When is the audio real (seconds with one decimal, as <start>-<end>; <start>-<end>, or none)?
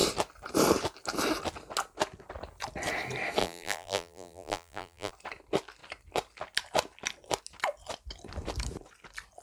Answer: 0.0-3.4; 5.1-9.4